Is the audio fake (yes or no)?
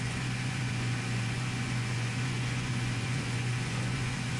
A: yes